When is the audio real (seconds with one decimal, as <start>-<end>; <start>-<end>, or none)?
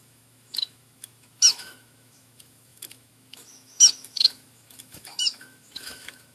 none